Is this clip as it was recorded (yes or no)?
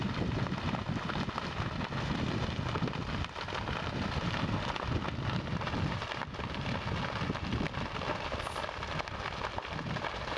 yes